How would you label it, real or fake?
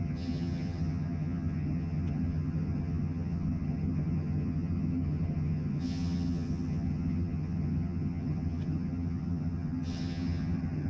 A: fake